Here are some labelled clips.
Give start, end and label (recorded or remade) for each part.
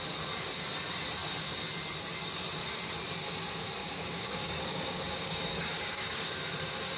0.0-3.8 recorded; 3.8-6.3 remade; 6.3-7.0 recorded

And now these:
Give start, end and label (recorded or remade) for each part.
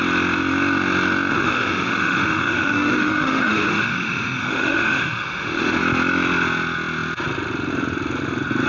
0.0-1.3 recorded; 1.3-5.8 remade; 5.8-8.7 recorded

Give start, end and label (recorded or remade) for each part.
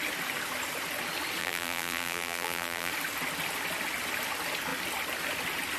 0.0-1.4 recorded; 1.4-2.9 remade; 2.9-5.8 recorded